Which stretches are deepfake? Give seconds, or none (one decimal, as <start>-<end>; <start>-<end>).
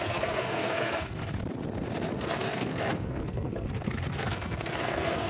0.0-1.2; 2.2-5.3